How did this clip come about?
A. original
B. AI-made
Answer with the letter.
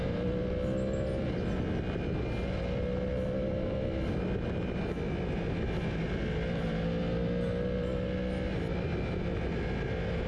A